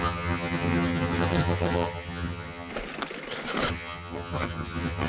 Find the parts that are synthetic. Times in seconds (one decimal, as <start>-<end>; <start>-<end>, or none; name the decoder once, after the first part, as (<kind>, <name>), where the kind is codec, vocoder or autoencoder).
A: 0.0-2.7 (vocoder, HiFi-GAN); 3.7-5.1